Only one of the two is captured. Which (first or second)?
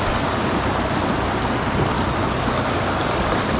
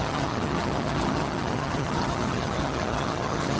first